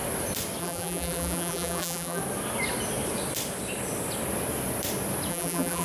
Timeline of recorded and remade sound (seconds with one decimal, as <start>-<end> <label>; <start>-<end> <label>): 0.0-0.6 recorded; 0.6-2.2 remade; 2.2-5.3 recorded; 5.3-5.8 remade